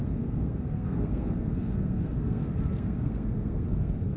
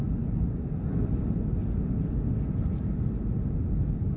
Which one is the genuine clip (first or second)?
second